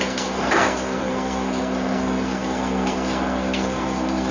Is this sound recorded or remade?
remade